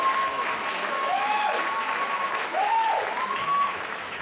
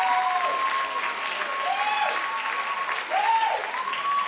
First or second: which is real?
second